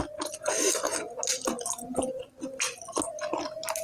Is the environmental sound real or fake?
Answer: real